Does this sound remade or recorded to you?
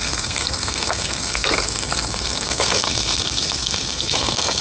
remade